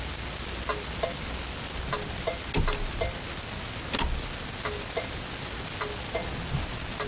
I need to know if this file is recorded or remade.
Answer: recorded